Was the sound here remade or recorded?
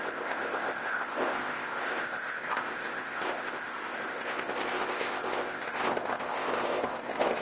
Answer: remade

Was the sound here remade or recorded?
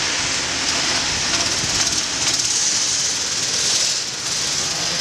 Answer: recorded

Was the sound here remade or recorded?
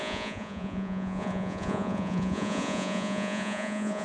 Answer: remade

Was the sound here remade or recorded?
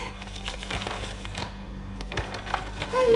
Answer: remade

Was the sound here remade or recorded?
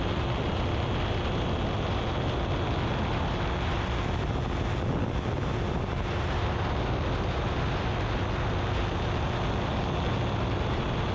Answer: recorded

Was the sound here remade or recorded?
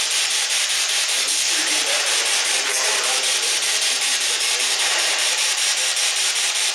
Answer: remade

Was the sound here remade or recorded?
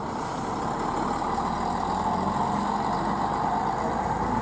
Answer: recorded